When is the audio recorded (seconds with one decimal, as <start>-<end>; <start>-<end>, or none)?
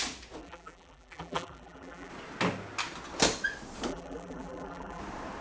0.0-0.4; 2.1-3.9; 5.0-5.4